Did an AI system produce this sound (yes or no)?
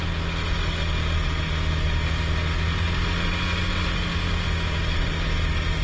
no